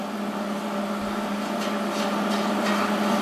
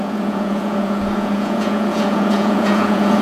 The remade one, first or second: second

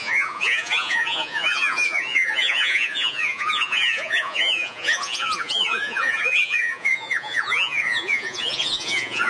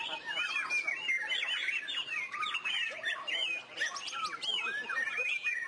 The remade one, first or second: first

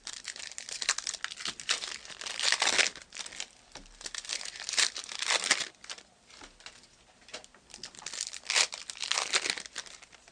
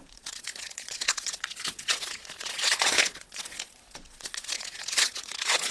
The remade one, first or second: second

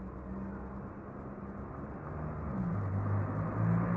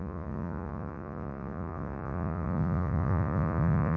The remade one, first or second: second